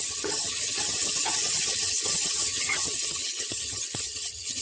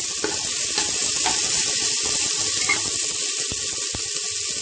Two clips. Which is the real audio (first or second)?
second